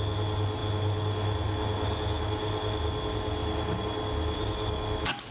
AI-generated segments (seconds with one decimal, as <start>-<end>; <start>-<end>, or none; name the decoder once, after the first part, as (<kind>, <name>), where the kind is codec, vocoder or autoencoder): none